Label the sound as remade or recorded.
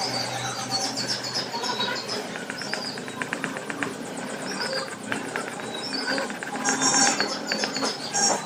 recorded